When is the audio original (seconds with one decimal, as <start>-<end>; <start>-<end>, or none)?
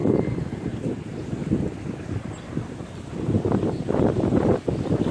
0.0-5.1